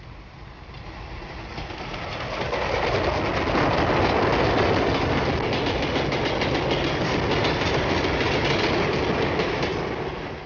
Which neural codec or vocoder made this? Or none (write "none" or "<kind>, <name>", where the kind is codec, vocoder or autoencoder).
none